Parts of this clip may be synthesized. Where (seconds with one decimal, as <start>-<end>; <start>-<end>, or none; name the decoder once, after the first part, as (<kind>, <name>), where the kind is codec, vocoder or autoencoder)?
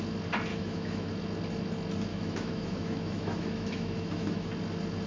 0.5-1.1 (autoencoder, DAC-VAE); 2.1-4.5